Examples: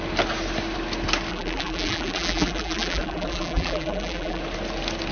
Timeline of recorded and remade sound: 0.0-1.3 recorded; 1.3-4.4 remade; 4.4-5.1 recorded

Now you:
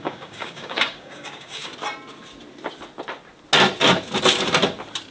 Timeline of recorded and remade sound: 0.0-1.7 remade; 1.7-5.1 recorded

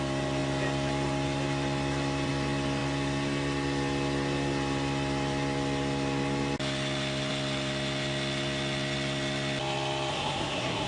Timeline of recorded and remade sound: 0.0-10.1 recorded; 10.1-10.9 remade

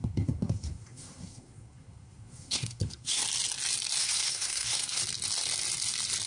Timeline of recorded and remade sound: 0.0-3.2 remade; 3.2-4.0 recorded; 4.0-5.0 remade; 5.0-6.3 recorded

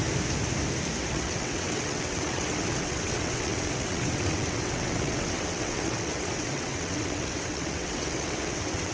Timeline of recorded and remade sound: 0.0-1.1 recorded; 1.1-8.9 remade

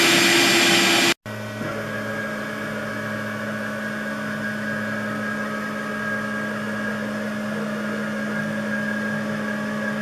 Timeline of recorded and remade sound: 0.0-10.0 recorded

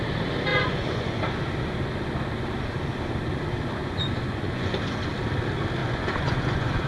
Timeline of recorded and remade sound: 0.0-0.5 recorded; 0.5-1.2 remade; 1.2-3.8 recorded; 3.8-5.1 remade; 5.1-5.8 recorded; 5.8-6.9 remade